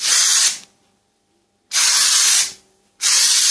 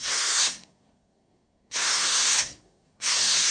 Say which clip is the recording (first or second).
first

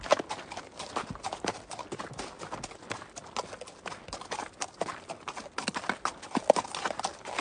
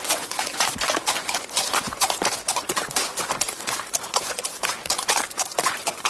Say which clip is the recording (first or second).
first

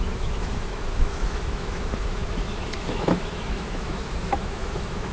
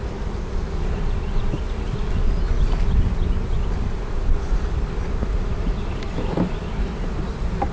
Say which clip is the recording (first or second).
second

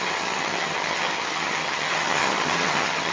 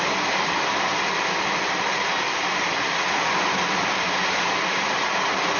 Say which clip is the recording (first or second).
second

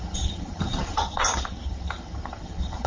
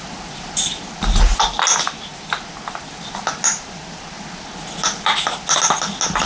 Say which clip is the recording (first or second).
second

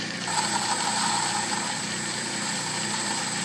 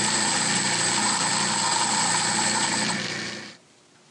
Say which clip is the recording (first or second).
second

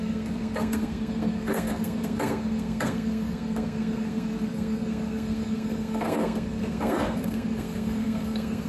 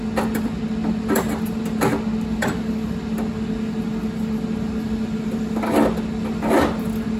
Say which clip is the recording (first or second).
second